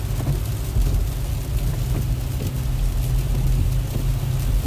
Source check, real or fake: real